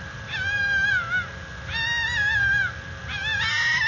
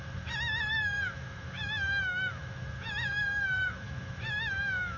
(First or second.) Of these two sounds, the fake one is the second